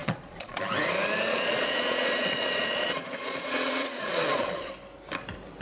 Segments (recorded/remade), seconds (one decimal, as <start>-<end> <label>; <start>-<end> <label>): 0.0-0.6 remade; 0.6-1.3 recorded; 1.3-4.7 remade; 4.7-5.6 recorded